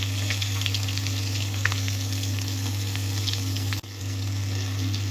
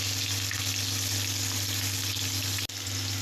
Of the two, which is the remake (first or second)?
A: first